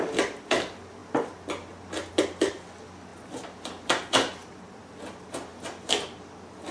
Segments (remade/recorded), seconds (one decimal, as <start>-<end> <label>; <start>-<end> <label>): 0.0-6.7 recorded